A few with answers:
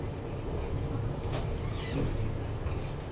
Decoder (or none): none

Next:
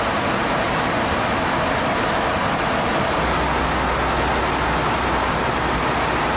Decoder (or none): none